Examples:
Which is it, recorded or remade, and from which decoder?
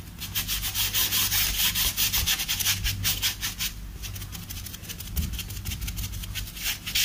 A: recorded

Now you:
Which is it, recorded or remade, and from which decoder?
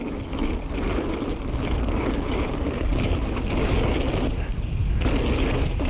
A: recorded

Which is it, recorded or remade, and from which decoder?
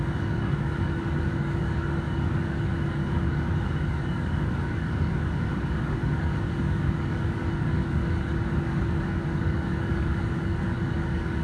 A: remade, codec, DAC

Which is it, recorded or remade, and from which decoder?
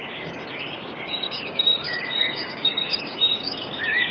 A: remade, codec, DAC